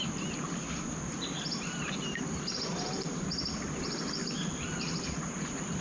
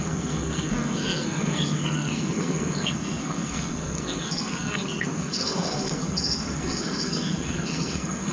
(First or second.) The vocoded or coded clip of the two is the second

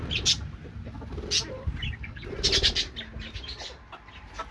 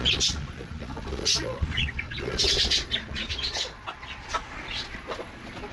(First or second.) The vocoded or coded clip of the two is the second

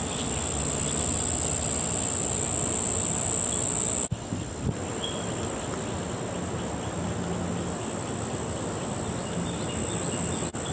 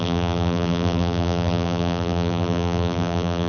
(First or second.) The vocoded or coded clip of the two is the second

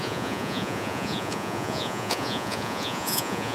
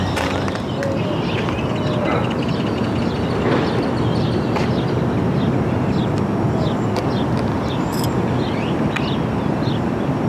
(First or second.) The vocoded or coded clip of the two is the first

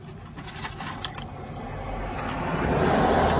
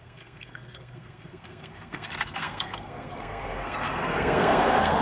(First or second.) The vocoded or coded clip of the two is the second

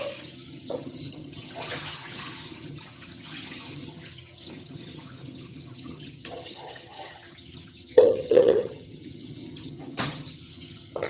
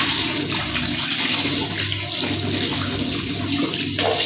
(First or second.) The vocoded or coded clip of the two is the first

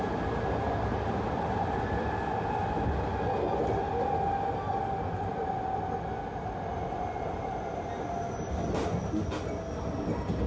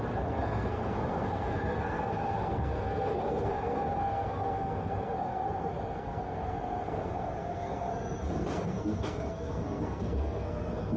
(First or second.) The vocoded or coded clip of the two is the second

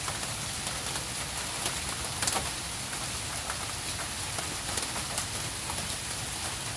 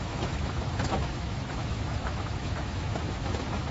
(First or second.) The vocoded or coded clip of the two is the second